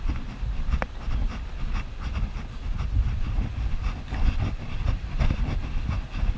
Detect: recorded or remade recorded